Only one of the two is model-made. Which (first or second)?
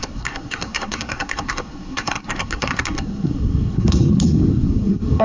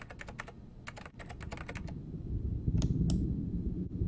first